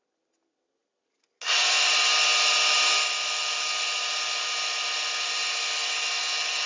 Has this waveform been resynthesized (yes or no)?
no